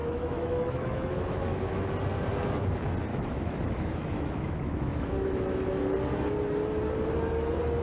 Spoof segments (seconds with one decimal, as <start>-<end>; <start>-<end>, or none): 0.0-1.9; 3.1-5.8